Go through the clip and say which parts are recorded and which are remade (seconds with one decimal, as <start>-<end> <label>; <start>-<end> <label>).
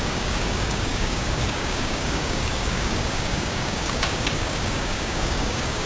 0.0-5.9 remade